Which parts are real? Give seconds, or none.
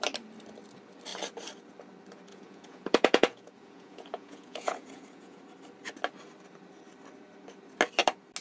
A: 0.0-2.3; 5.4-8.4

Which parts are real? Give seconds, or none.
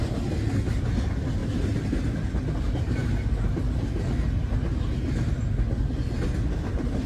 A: 0.0-7.1